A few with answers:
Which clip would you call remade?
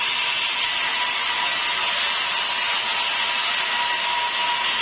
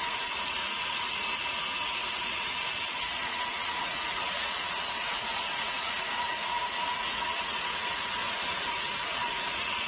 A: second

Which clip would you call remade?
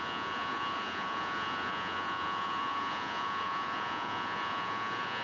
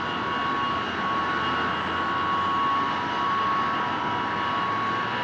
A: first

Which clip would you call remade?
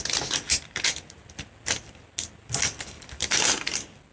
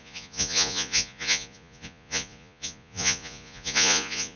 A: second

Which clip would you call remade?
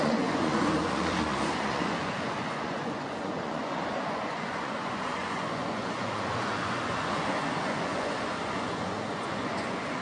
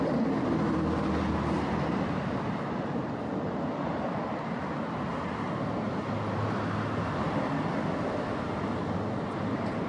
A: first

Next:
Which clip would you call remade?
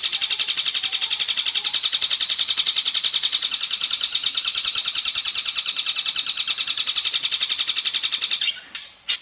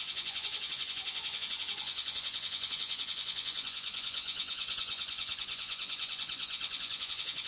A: second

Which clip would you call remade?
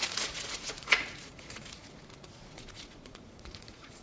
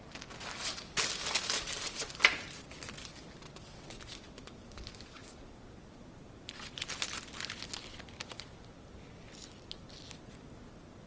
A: first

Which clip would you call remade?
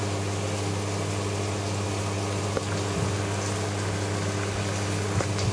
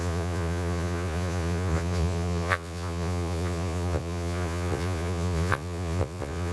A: second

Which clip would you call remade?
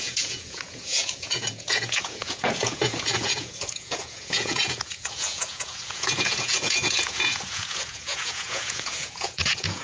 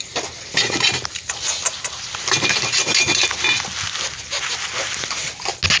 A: first